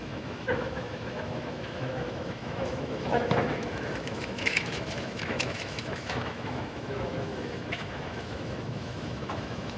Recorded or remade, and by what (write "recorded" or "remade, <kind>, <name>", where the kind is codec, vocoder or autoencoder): remade, autoencoder, DAC-VAE